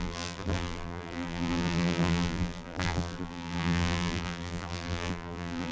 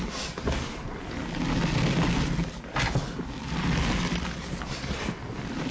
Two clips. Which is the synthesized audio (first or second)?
first